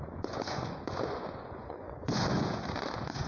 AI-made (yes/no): yes